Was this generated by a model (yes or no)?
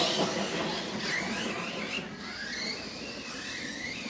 no